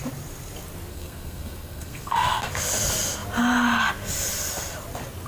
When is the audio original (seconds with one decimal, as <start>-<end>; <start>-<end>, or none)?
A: 0.0-0.9; 2.5-5.3